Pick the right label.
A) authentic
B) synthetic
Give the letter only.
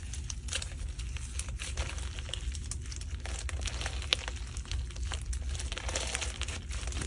A